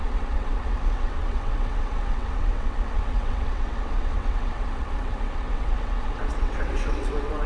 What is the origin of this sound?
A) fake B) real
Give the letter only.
A